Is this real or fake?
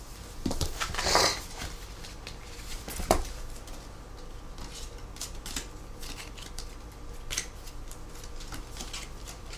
real